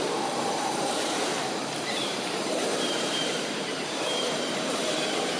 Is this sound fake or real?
fake